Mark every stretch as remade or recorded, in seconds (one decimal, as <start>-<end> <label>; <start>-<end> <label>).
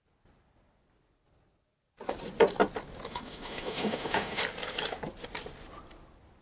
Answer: 0.0-3.1 recorded; 3.1-4.4 remade; 4.4-6.4 recorded